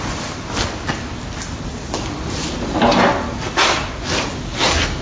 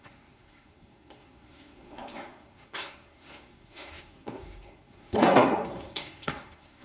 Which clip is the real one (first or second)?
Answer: first